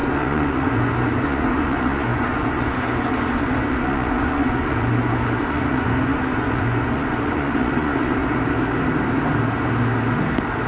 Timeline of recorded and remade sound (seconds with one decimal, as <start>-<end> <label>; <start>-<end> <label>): 0.0-8.2 remade; 8.2-10.7 recorded